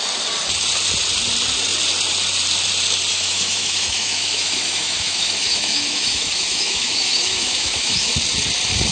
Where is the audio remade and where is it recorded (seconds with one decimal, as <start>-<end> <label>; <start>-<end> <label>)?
0.0-3.1 recorded; 3.1-8.1 remade; 8.1-8.9 recorded